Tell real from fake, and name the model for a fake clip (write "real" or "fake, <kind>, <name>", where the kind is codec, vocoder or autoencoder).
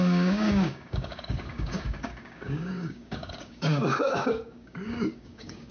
fake, codec, DAC